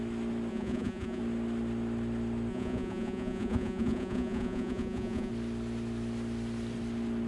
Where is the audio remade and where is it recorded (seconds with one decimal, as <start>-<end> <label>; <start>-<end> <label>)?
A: 0.0-0.5 recorded; 0.5-1.2 remade; 1.2-2.5 recorded; 2.5-5.3 remade; 5.3-7.3 recorded